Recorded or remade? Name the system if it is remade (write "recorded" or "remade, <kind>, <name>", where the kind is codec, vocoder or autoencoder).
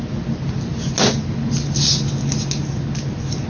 recorded